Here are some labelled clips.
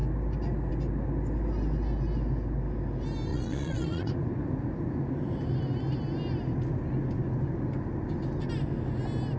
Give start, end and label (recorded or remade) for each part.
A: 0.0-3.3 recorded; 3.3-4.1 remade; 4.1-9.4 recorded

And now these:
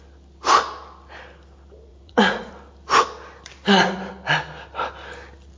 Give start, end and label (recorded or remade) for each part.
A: 0.0-1.9 recorded; 1.9-2.5 remade; 2.5-5.6 recorded

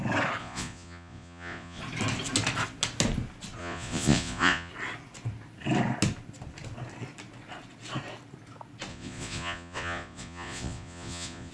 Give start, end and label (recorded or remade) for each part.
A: 0.0-0.4 recorded; 0.4-1.8 remade; 1.8-3.6 recorded; 3.6-4.7 remade; 4.7-8.9 recorded; 8.9-11.5 remade

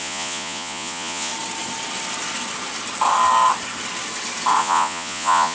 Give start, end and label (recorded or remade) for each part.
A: 0.0-1.3 remade; 1.3-4.6 recorded; 4.6-5.5 remade

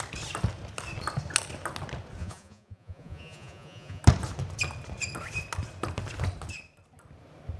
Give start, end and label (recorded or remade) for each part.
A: 0.0-2.2 recorded; 2.2-4.0 remade; 4.0-7.6 recorded

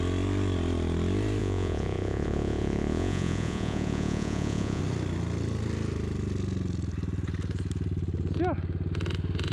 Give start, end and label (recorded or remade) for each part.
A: 0.0-1.4 recorded; 1.4-4.8 remade; 4.8-9.5 recorded

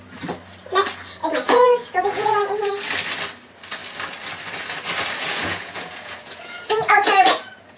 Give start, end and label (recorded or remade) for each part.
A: 0.0-1.2 recorded; 1.2-2.7 remade; 2.7-5.2 recorded; 5.2-7.8 remade